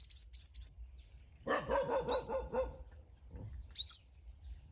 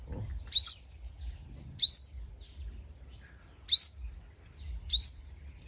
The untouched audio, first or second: second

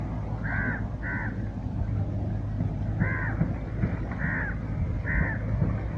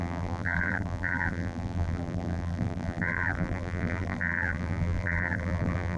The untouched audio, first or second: first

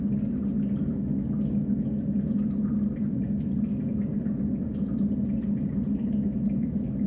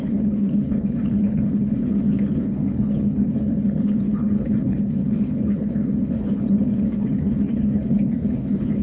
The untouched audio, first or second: first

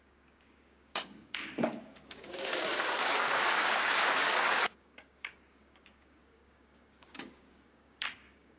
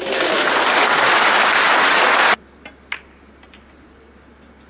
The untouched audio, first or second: second